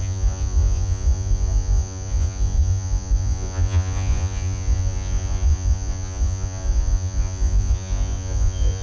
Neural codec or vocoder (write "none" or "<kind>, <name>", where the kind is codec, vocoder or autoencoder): vocoder, Vocos